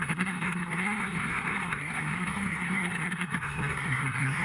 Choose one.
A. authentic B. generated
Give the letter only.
B